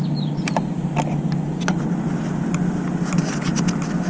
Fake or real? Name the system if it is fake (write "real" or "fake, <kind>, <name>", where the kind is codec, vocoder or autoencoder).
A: real